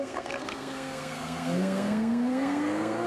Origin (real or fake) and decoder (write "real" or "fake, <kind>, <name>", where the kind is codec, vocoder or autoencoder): fake, codec, SNAC